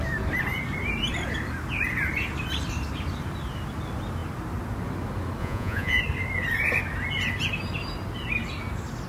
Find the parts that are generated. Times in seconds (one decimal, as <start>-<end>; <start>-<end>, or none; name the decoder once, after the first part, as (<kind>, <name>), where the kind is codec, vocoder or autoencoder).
5.4-6.0 (vocoder, Vocos)